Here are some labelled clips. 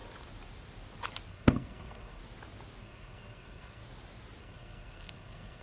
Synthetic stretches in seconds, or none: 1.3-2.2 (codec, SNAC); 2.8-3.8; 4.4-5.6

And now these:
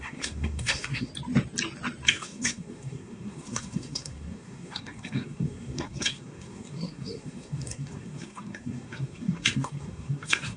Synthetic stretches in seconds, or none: 0.0-1.1 (codec, SNAC); 2.1-10.6

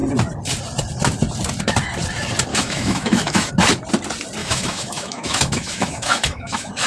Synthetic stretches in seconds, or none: 2.5-3.5 (autoencoder, DAC-VAE); 4.4-6.9

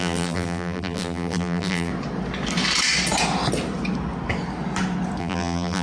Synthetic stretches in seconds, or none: 0.0-1.9 (vocoder, BigVGAN v2); 5.2-5.8

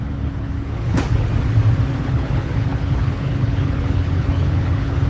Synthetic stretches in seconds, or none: 0.0-1.3 (codec, HILCodec); 2.0-5.1

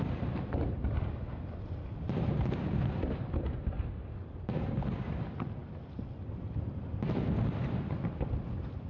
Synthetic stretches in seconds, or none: none

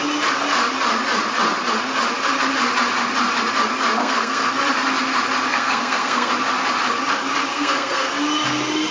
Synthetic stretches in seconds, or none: 4.0-4.5 (codec, SNAC); 5.5-6.3; 7.5-8.1